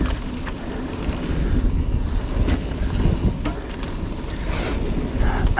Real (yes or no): yes